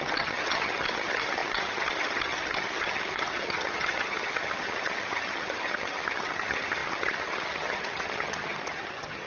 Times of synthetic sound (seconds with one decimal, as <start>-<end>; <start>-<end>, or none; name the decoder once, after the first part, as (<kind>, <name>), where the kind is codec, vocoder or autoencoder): 0.0-9.3 (vocoder, HiFi-GAN)